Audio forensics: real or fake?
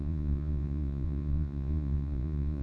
fake